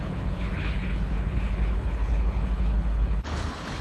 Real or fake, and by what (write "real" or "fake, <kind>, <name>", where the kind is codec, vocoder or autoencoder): fake, codec, HILCodec